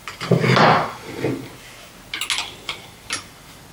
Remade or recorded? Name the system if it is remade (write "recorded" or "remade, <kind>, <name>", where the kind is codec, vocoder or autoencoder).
recorded